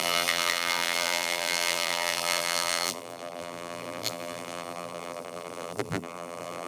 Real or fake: fake